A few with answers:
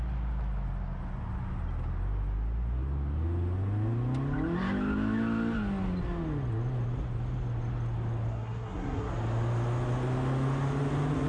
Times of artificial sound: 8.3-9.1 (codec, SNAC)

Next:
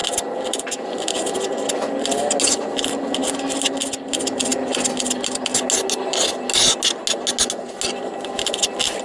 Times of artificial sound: none

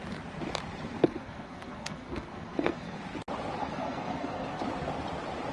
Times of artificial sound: 1.0-3.0 (codec, SNAC); 3.6-4.6

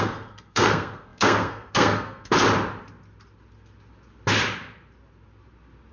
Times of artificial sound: 0.0-2.3 (codec, SNAC)

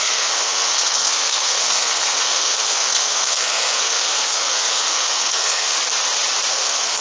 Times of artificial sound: 0.0-5.7 (codec, SNAC); 6.5-7.0

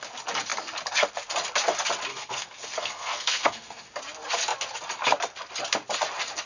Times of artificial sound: 2.1-3.9 (codec, SNAC)

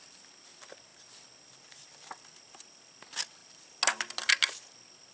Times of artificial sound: none

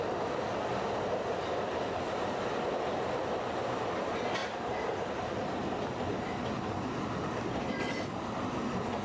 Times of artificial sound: none